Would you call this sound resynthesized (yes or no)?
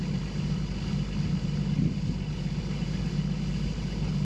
no